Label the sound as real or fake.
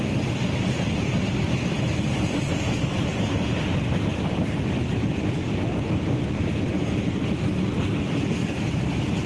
real